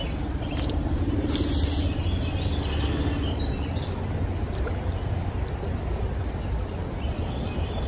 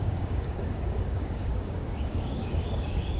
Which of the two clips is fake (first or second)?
second